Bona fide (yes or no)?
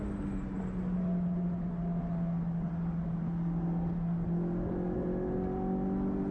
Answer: yes